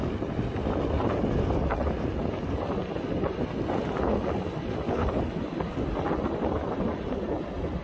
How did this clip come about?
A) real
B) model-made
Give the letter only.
A